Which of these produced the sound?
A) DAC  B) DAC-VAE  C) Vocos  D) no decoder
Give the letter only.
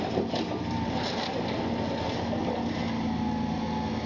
D